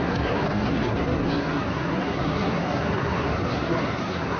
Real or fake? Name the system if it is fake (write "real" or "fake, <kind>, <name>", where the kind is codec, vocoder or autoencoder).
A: fake, codec, SNAC